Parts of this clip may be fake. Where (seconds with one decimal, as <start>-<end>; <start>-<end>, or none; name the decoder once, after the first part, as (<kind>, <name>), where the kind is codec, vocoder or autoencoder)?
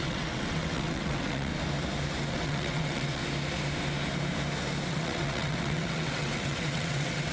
0.0-1.5 (vocoder, WaveNeXt); 2.3-3.2; 4.9-7.3